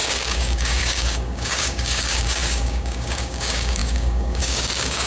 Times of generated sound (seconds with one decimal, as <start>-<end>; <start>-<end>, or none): 0.0-5.1